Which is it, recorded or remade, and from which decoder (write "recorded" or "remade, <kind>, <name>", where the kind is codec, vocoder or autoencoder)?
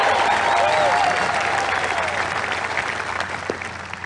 recorded